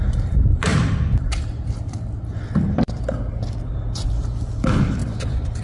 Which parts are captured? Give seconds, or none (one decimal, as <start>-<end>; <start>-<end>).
none